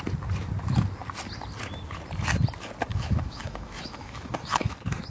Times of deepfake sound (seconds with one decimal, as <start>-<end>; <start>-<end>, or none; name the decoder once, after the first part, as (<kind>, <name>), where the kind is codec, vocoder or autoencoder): 2.9-5.1 (autoencoder, DAC-VAE)